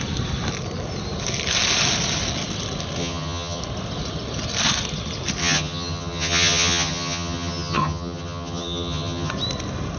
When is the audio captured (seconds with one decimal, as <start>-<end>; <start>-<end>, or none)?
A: 0.0-3.0; 3.6-5.4; 9.3-10.0